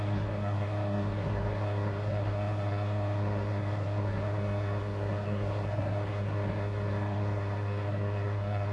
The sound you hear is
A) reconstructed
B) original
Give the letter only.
A